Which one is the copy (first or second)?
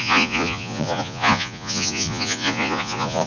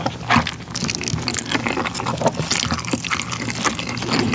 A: first